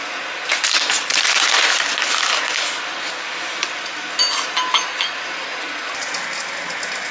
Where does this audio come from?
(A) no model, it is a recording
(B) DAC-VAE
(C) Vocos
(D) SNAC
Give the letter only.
A